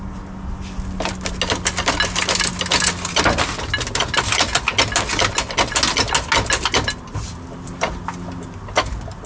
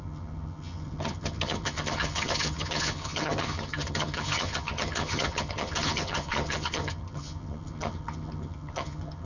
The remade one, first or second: second